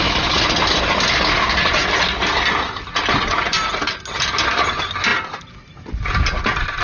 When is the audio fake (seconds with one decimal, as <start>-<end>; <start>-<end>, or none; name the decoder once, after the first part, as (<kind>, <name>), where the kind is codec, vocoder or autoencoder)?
none